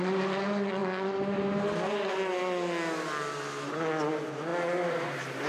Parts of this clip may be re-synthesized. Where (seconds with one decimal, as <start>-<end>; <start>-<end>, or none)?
none